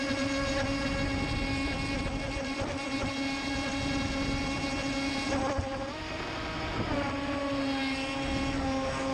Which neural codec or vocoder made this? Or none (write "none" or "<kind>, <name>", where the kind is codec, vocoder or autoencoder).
none